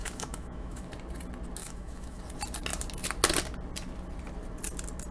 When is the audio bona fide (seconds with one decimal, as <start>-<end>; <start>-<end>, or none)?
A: 0.9-1.6; 2.2-5.1